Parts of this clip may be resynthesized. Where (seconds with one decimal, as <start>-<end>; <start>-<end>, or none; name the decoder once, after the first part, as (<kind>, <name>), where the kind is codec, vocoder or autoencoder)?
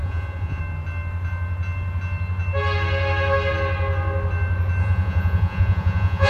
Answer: 0.0-0.6 (vocoder, Vocos); 4.8-6.3